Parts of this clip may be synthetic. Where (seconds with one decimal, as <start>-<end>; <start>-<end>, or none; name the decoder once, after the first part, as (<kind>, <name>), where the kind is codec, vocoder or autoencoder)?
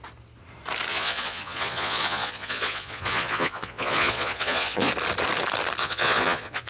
0.9-4.9 (vocoder, Vocos); 5.8-6.7